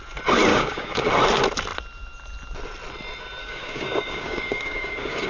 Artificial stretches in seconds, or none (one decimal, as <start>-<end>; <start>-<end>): 0.5-1.1; 3.4-5.3